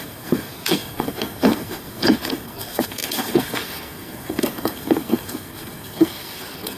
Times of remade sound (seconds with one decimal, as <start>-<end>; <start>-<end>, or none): 0.0-6.8